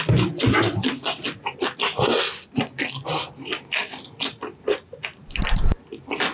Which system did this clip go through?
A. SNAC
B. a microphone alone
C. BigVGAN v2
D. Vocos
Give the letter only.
B